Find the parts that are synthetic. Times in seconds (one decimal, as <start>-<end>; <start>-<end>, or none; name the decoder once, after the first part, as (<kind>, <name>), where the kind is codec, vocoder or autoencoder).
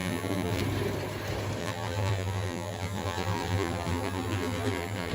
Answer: 0.0-0.6 (vocoder, BigVGAN v2); 1.6-5.1